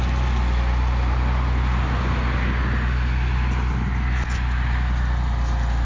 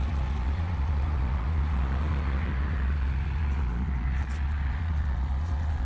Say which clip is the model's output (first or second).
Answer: second